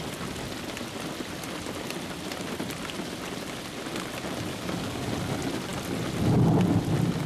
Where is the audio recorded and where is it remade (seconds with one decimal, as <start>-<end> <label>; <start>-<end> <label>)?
0.0-4.5 recorded; 4.5-5.1 remade; 5.1-7.3 recorded